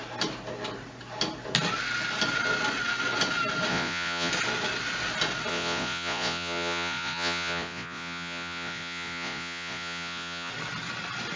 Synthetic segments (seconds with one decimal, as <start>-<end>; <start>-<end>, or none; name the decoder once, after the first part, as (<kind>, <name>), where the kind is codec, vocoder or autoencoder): 3.7-4.3 (vocoder, Vocos); 5.5-10.5